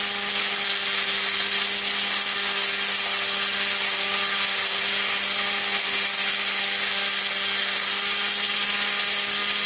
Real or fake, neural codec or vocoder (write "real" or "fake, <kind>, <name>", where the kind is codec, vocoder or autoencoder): real